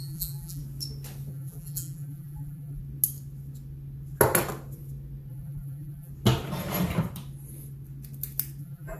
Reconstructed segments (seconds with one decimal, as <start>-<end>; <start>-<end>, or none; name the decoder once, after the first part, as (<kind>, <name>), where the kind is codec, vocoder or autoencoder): 0.0-0.6 (vocoder, BigVGAN v2); 1.3-2.8; 5.3-6.1; 8.6-9.0